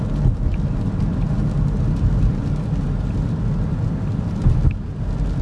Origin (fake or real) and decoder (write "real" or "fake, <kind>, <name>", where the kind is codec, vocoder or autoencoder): real